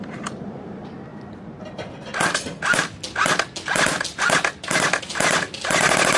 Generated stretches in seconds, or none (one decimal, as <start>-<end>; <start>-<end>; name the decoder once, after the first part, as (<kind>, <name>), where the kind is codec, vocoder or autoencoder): none